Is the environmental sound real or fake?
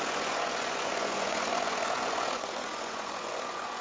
fake